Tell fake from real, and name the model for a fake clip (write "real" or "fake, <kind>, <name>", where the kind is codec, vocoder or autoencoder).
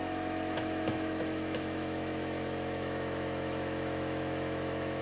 fake, autoencoder, DAC-VAE